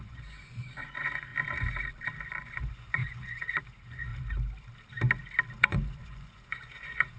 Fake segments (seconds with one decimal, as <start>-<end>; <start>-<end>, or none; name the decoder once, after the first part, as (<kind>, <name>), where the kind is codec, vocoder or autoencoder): 0.0-1.3 (vocoder, Vocos); 2.3-4.1; 5.6-7.2